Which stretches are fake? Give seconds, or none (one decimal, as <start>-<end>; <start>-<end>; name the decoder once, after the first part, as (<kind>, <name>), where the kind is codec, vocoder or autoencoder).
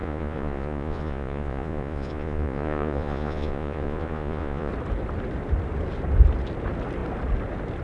0.0-4.7 (vocoder, Vocos)